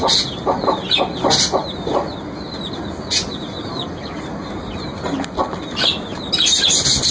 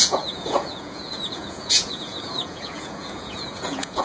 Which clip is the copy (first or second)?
second